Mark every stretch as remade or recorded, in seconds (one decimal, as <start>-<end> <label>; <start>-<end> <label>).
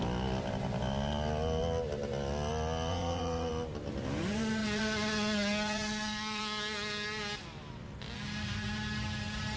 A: 0.0-2.9 recorded; 2.9-3.5 remade; 3.5-4.6 recorded; 4.6-6.4 remade; 6.4-9.6 recorded